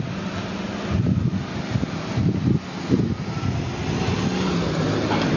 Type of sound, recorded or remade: recorded